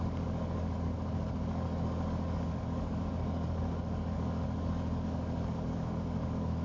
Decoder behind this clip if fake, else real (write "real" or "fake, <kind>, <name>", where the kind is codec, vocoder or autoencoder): fake, codec, DAC